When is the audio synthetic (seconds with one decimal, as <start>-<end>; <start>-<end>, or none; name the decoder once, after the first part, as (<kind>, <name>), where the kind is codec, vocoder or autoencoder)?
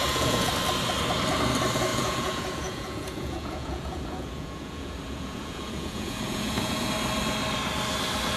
0.0-0.5 (vocoder, Vocos); 1.9-6.9